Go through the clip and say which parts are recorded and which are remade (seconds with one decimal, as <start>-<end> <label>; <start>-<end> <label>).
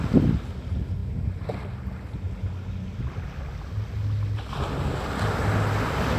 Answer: 0.0-6.2 recorded